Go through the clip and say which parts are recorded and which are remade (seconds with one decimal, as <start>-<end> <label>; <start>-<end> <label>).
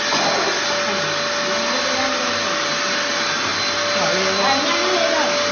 0.0-5.5 recorded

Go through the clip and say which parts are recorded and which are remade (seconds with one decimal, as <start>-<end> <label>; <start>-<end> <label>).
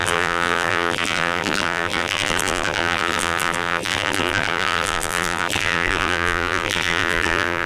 0.0-7.7 remade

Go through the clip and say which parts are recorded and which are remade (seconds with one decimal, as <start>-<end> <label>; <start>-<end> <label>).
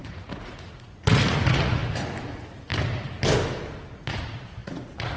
0.0-1.8 remade; 1.8-2.3 recorded; 2.3-2.7 remade; 2.7-4.0 recorded; 4.0-5.2 remade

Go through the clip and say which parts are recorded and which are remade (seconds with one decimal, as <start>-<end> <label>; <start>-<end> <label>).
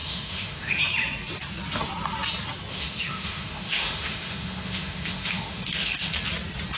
0.0-0.8 remade; 0.8-2.7 recorded; 2.7-6.1 remade; 6.1-6.8 recorded